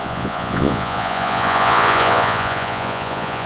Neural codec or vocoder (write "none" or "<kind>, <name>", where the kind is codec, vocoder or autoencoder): vocoder, Vocos